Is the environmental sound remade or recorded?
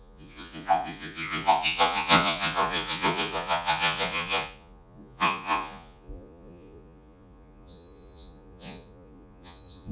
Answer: remade